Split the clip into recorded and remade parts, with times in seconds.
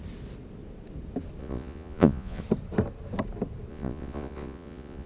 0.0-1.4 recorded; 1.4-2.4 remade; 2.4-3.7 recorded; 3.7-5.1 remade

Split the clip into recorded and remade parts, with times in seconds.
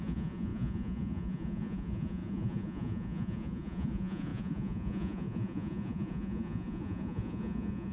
0.0-7.9 remade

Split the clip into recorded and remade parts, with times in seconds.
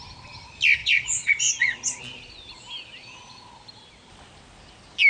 0.0-0.8 recorded; 0.8-2.0 remade; 2.0-5.1 recorded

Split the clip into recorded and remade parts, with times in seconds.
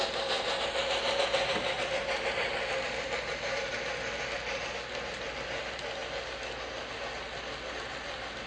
0.0-8.5 recorded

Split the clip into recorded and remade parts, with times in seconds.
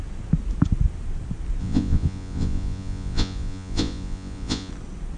0.0-1.6 recorded; 1.6-4.7 remade; 4.7-5.2 recorded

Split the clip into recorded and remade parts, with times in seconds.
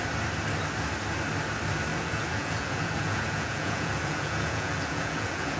0.0-1.9 recorded; 1.9-5.6 remade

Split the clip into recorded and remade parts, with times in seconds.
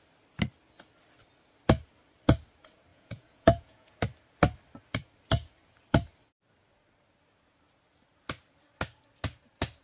0.0-2.9 recorded; 2.9-4.0 remade; 4.0-9.8 recorded